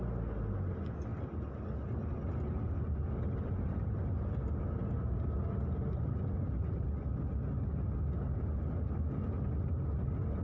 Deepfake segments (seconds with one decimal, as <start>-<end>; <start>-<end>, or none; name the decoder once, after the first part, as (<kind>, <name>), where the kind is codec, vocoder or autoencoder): none